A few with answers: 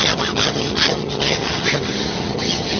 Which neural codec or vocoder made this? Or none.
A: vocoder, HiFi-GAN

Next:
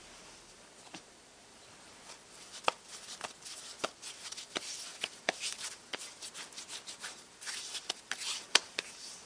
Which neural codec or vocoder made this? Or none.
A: vocoder, BigVGAN v2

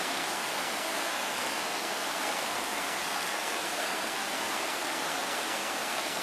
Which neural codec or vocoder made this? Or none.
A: codec, SNAC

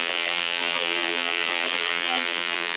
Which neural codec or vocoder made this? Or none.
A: vocoder, BigVGAN v2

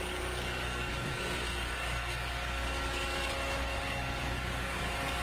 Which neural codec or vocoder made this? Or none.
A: codec, DAC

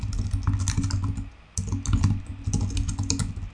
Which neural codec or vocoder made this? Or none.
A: none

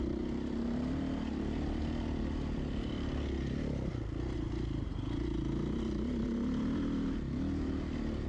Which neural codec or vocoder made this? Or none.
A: none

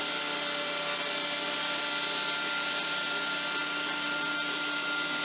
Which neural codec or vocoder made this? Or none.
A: none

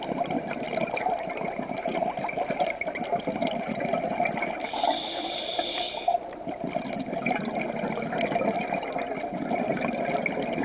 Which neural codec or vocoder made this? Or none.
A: none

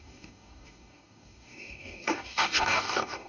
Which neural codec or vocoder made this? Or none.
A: codec, DAC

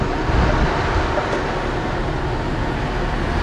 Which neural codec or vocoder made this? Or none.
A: none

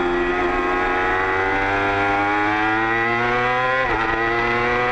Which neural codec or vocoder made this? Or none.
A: none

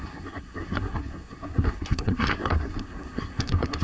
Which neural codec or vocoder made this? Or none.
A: codec, SNAC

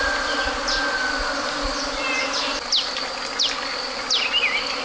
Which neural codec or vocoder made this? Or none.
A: none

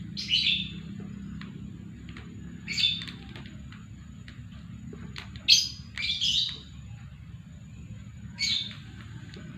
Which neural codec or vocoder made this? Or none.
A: none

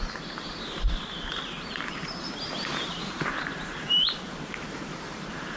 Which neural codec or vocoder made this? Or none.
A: vocoder, BigVGAN v2